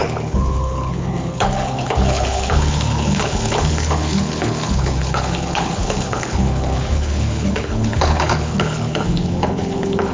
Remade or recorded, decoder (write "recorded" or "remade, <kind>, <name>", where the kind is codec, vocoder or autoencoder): remade, codec, HILCodec